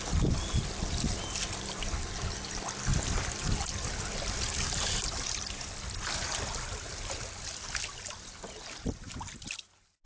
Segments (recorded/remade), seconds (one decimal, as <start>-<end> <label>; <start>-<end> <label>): 0.0-2.9 recorded; 2.9-4.0 remade; 4.0-10.1 recorded